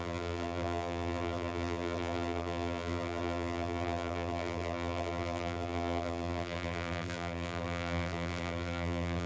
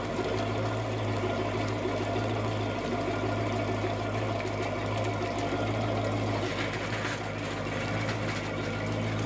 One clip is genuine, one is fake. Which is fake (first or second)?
first